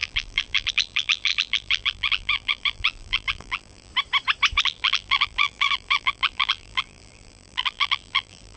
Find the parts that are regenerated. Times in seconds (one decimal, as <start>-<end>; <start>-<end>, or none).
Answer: 0.0-3.9; 4.6-8.6